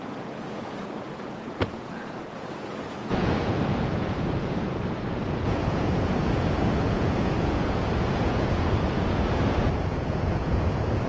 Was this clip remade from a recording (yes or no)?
yes